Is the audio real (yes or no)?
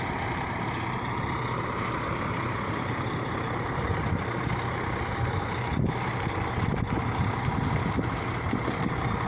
no